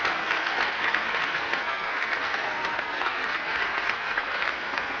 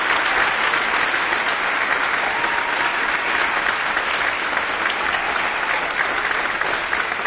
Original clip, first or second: second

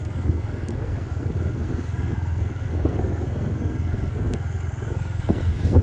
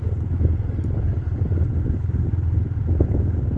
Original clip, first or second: second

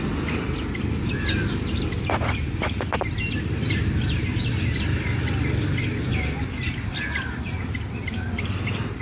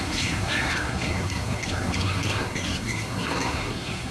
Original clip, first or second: first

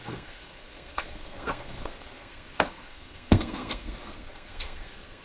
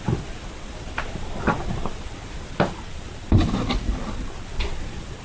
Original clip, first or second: second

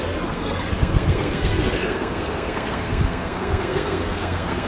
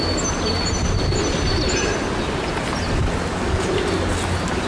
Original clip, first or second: second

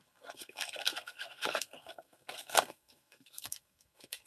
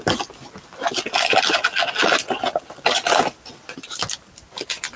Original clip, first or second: second